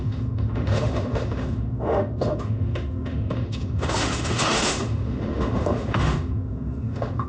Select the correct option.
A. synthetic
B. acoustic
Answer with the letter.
A